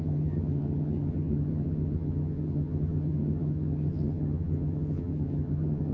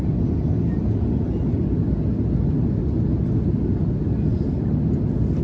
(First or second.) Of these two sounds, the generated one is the first